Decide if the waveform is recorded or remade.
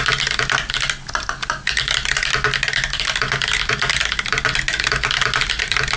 recorded